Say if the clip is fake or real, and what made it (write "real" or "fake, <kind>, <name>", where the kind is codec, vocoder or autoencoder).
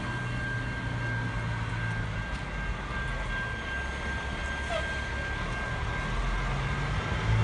real